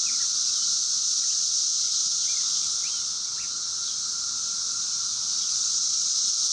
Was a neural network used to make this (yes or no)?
no